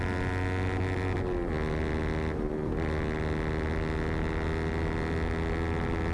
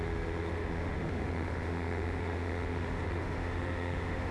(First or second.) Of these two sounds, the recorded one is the first